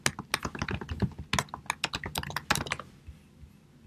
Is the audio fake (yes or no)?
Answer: no